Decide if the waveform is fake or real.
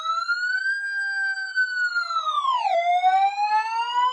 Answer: real